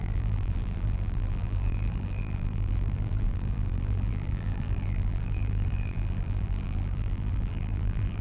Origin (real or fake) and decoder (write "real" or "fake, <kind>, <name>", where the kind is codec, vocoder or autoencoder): fake, vocoder, BigVGAN v2